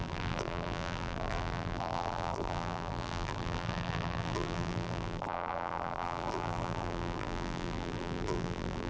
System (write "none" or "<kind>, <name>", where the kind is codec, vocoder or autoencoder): vocoder, BigVGAN v2